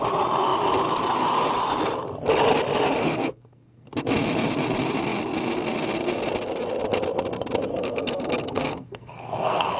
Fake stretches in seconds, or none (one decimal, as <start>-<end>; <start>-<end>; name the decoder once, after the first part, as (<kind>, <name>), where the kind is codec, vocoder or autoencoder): 3.0-3.9 (codec, SNAC); 7.7-9.8